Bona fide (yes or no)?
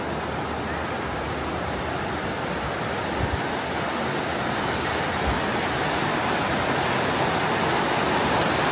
yes